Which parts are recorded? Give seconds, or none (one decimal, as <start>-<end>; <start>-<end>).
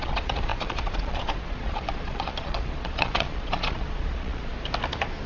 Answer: 4.5-5.3